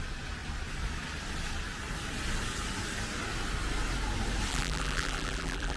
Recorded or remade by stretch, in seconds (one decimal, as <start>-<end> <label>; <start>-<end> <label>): 0.0-4.5 recorded; 4.5-5.8 remade